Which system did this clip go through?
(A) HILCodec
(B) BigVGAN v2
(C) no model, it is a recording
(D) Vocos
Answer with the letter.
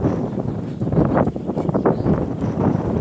C